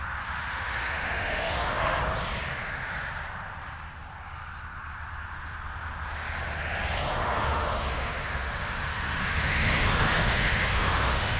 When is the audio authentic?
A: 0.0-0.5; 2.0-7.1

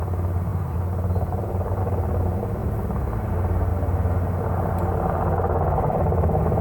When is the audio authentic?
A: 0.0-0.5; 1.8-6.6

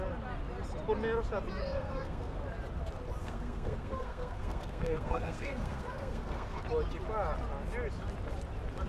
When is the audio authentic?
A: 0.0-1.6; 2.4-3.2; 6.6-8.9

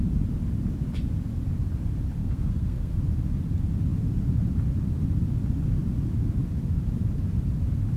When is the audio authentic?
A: 0.0-2.2; 3.0-8.0